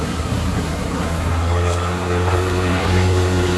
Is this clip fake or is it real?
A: fake